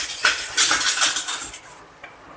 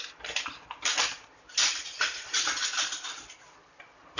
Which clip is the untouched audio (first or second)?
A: first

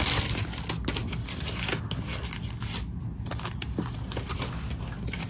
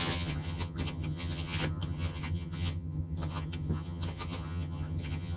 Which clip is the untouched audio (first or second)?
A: first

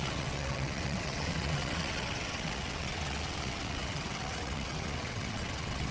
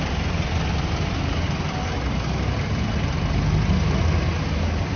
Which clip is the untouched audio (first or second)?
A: second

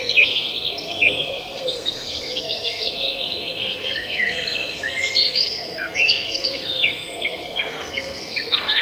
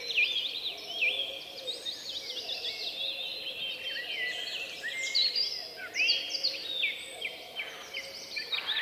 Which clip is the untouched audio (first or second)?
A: second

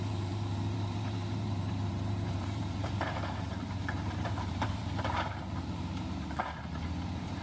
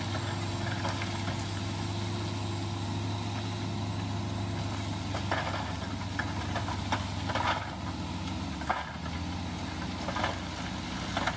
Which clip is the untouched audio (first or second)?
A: second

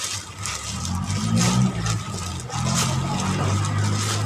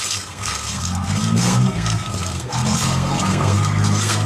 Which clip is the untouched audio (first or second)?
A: first